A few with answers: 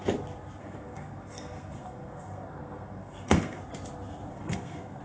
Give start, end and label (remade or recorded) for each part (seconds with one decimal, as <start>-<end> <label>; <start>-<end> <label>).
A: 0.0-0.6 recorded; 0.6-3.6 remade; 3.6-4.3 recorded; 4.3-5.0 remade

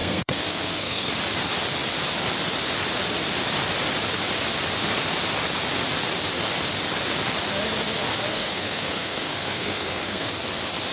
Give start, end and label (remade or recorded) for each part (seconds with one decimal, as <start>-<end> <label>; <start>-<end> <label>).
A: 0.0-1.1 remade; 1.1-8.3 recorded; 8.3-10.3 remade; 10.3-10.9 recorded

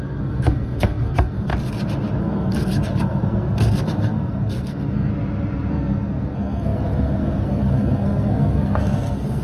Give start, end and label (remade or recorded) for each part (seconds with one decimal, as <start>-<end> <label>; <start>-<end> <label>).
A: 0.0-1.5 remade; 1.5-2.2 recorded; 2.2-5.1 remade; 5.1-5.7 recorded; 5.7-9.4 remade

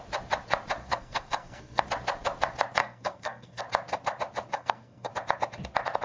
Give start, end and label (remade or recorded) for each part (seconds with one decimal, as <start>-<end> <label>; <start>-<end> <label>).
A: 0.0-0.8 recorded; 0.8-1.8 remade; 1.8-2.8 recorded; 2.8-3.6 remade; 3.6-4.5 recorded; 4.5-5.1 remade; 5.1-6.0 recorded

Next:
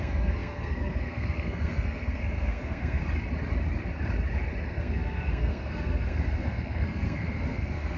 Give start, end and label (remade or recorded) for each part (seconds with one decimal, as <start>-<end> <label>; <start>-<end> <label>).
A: 0.0-3.0 remade; 3.0-4.6 recorded; 4.6-8.0 remade

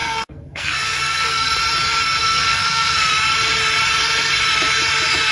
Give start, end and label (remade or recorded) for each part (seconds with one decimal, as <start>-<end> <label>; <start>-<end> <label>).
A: 0.0-1.5 remade; 1.5-2.2 recorded; 2.2-3.1 remade; 3.1-5.3 recorded